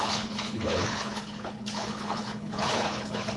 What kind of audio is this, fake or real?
fake